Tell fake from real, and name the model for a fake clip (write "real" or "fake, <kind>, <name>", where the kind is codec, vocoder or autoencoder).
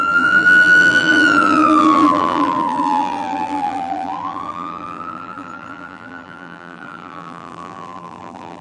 fake, vocoder, BigVGAN v2